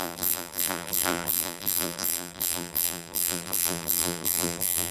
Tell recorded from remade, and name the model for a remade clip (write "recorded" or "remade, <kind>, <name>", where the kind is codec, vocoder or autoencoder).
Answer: remade, vocoder, BigVGAN v2